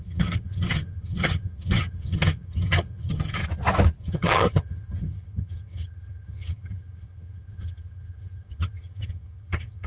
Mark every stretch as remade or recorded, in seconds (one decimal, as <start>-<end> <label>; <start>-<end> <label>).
0.0-3.4 remade; 3.4-4.0 recorded; 4.0-9.9 remade